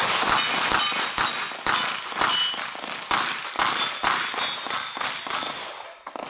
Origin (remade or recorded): recorded